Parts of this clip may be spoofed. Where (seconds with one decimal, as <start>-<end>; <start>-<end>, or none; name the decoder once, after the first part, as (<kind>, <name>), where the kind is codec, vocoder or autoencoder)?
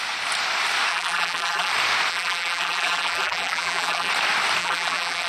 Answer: 0.9-1.7 (vocoder, BigVGAN v2); 2.1-4.1; 4.6-5.3